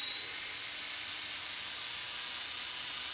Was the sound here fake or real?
real